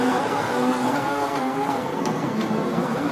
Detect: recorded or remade remade